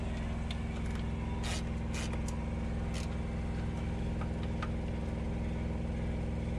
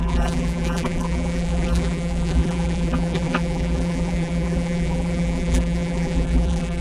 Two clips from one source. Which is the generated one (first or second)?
second